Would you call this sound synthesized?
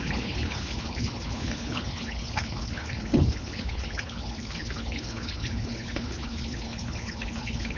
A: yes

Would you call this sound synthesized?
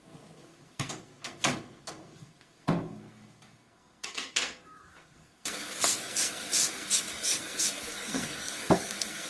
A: yes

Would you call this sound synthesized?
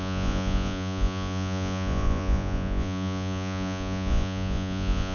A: yes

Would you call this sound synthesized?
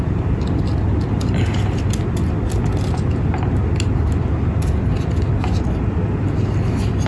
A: no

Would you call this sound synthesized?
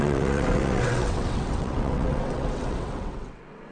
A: yes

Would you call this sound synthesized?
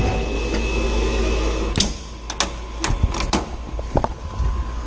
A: no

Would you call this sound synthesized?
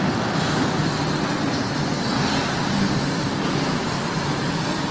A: no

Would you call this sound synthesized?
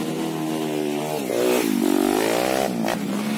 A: no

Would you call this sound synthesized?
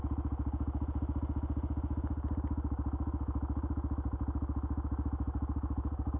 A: no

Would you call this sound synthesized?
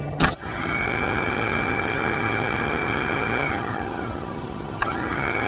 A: yes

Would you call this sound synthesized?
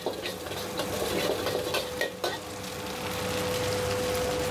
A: no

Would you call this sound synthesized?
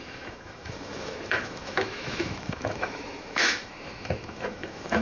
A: yes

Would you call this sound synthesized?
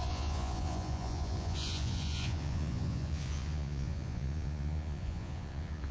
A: yes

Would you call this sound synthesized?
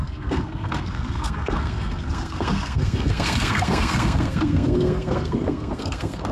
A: yes